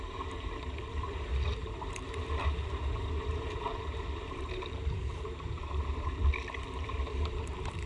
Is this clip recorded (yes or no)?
no